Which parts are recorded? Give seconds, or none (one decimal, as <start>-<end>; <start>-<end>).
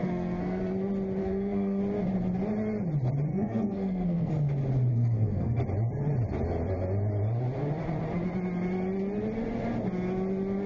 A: 0.6-1.2; 1.8-3.3; 4.3-4.9; 5.6-10.7